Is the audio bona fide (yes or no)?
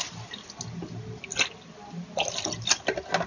yes